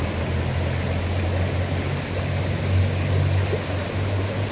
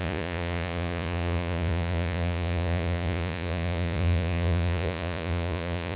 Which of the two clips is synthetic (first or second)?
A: second